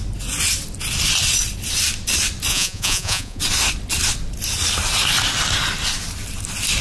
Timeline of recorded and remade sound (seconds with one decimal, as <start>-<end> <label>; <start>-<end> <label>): 0.0-2.5 recorded; 2.5-3.4 remade; 3.4-6.8 recorded